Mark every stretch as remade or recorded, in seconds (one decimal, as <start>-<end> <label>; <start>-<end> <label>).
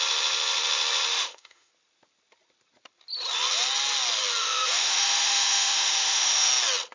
0.0-1.1 recorded; 1.1-1.7 remade; 1.7-4.4 recorded; 4.4-6.5 remade; 6.5-6.9 recorded